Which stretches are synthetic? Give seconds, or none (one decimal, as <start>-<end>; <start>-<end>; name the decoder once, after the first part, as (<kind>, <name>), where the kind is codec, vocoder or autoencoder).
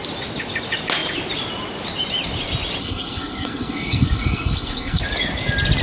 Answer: 2.8-5.0 (codec, SNAC)